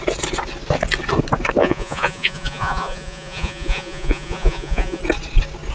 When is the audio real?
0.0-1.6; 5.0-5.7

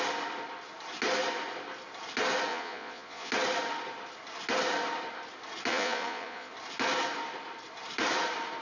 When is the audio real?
0.0-2.5; 3.3-5.7; 6.5-8.6

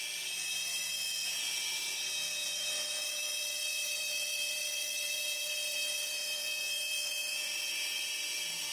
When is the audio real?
none

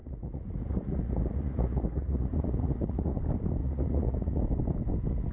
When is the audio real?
3.2-3.6; 4.4-5.3